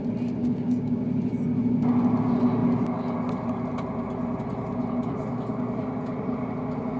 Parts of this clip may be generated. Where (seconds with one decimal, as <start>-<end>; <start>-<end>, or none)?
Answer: 0.4-1.0